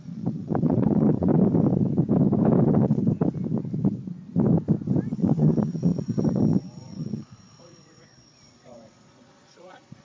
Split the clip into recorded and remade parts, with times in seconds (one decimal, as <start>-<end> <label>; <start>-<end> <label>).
0.0-1.3 remade; 1.3-2.6 recorded; 2.6-3.0 remade; 3.0-5.1 recorded; 5.1-10.0 remade